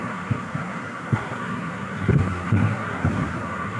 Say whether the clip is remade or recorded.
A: remade